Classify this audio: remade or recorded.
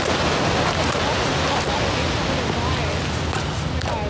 recorded